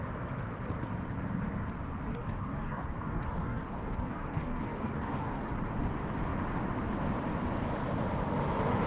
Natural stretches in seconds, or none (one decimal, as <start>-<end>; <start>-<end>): 0.0-2.1; 5.5-8.9